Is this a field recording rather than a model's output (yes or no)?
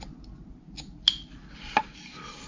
yes